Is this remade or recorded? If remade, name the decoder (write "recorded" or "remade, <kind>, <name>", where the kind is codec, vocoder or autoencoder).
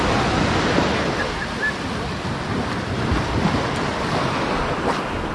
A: recorded